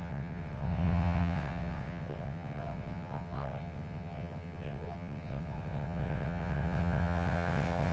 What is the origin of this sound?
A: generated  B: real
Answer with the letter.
A